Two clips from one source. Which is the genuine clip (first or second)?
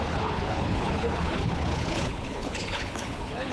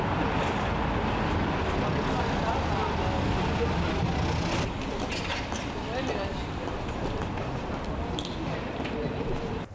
second